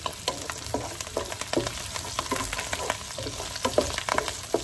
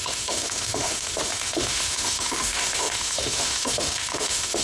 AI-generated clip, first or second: second